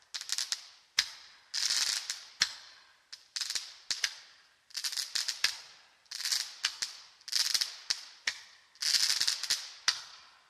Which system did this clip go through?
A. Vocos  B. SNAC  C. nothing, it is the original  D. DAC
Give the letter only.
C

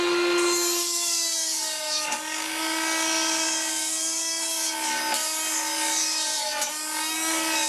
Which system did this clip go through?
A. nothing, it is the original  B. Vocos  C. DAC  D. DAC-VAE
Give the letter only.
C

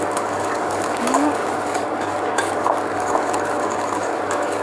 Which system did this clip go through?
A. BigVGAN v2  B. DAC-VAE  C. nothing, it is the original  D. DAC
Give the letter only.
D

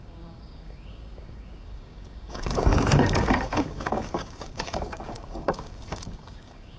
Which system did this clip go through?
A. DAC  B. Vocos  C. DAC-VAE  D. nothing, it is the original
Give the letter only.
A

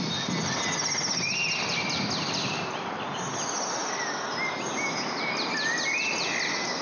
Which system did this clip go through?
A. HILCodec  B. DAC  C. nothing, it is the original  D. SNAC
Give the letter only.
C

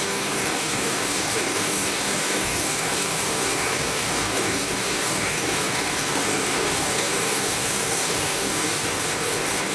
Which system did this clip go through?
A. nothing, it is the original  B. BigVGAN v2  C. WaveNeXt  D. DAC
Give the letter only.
D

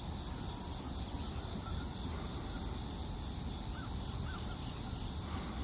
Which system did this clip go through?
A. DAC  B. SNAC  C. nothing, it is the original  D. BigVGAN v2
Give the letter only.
C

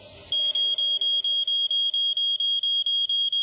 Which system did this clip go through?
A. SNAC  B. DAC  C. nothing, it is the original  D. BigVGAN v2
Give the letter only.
C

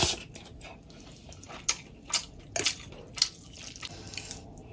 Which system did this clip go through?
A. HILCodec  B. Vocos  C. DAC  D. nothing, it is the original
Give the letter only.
D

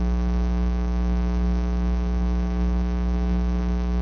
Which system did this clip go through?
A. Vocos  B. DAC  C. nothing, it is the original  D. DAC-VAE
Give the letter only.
B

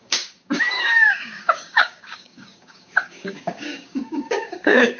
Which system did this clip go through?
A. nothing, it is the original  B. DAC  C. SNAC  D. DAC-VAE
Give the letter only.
B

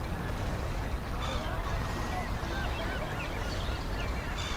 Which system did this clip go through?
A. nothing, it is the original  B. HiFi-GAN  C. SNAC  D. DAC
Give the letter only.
A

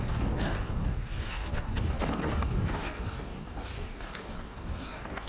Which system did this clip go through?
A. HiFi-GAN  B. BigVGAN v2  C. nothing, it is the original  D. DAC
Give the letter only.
D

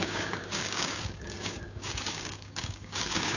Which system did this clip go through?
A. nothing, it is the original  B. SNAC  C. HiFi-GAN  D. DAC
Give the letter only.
D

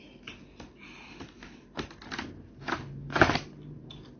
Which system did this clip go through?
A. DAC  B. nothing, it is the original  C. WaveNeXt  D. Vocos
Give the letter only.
B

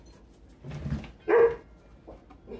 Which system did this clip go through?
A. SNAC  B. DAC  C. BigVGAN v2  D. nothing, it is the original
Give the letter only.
D